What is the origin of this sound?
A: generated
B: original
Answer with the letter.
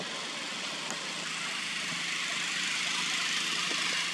B